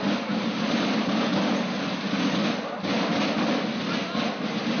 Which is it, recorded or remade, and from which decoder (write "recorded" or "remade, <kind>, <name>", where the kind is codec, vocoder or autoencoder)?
recorded